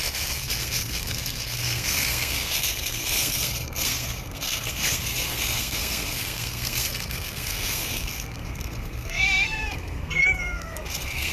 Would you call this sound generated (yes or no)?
yes